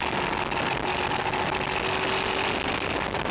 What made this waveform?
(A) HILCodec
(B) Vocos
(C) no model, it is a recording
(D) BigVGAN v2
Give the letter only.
C